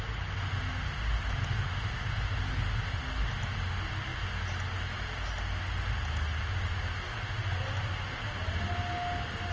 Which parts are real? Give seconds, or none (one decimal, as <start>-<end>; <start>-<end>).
0.0-9.5